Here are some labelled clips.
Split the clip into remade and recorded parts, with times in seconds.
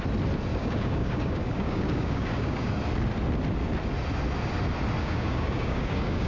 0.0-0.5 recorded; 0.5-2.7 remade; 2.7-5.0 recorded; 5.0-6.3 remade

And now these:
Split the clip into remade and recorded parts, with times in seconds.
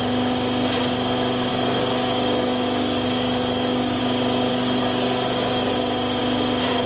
0.0-1.5 recorded; 1.5-4.0 remade; 4.0-4.5 recorded; 4.5-5.7 remade; 5.7-6.9 recorded